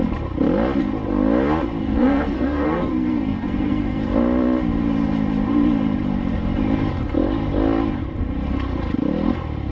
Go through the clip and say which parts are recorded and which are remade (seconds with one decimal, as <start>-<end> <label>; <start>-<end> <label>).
0.0-1.8 recorded; 1.8-4.0 remade; 4.0-9.7 recorded